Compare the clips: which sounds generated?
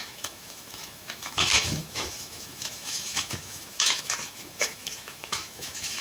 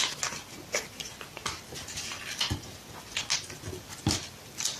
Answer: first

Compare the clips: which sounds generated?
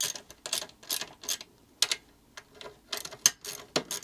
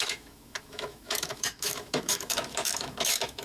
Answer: second